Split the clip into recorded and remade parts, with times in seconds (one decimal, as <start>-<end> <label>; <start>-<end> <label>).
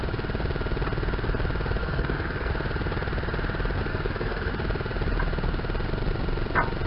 0.0-1.8 recorded; 1.8-2.5 remade; 2.5-3.9 recorded; 3.9-4.5 remade; 4.5-6.9 recorded